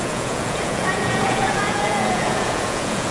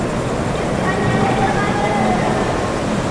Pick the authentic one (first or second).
second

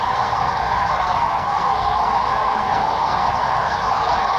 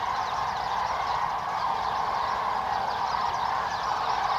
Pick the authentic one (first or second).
second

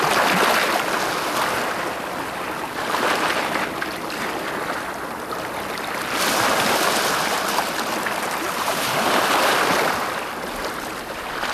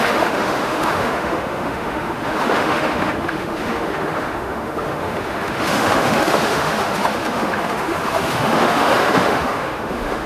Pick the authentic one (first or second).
first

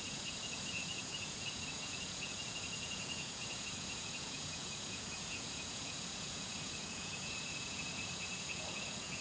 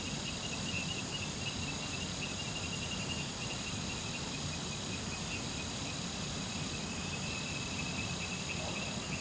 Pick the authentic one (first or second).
second